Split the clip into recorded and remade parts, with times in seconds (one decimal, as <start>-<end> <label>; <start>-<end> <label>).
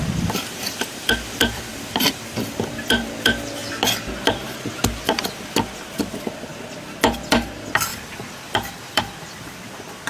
0.0-3.6 remade; 3.6-5.0 recorded; 5.0-6.5 remade; 6.5-7.2 recorded; 7.2-10.1 remade